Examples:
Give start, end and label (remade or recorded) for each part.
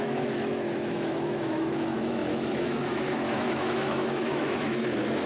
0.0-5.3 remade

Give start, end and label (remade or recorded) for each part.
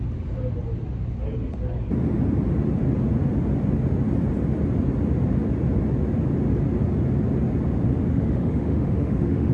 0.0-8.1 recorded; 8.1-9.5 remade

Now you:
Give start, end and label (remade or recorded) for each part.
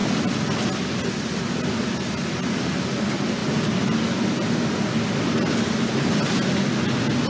0.0-7.3 recorded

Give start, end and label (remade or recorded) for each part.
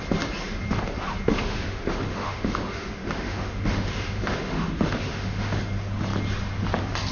0.0-1.3 recorded; 1.3-5.6 remade; 5.6-7.1 recorded